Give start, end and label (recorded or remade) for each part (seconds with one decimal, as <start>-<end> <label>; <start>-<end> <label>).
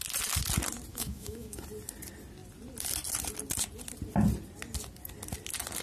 0.0-0.9 recorded; 0.9-1.6 remade; 1.6-5.8 recorded